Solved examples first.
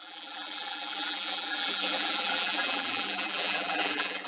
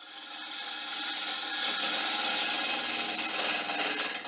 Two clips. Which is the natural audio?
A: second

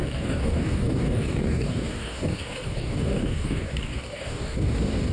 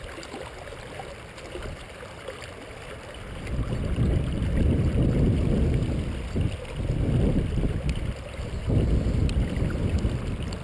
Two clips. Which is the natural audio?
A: second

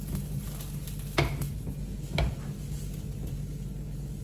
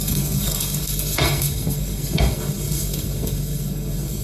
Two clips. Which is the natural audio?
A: first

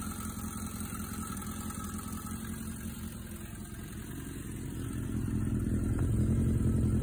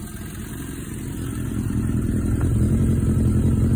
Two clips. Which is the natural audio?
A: first